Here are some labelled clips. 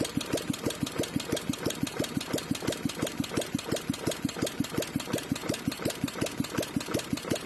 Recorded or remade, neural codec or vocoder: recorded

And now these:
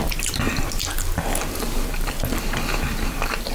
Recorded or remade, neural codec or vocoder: recorded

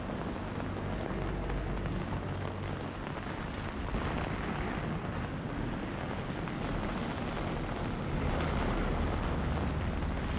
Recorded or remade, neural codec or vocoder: recorded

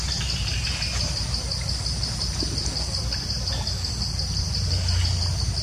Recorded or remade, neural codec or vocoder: recorded